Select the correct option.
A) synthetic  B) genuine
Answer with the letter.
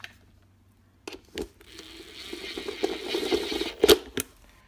B